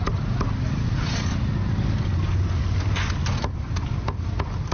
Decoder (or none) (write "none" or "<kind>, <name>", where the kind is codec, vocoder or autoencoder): none